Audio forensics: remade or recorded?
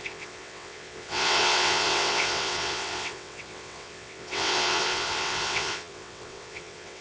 remade